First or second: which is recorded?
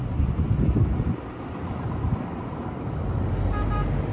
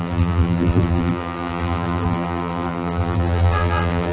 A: first